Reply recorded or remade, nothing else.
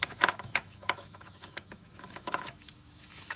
remade